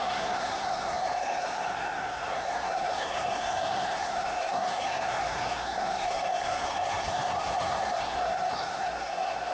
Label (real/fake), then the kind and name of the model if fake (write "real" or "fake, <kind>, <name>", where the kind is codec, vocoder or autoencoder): fake, codec, SNAC